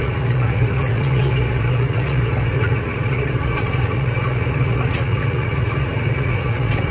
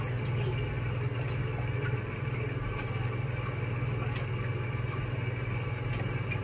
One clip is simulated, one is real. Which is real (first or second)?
second